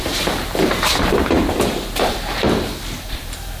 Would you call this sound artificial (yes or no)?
yes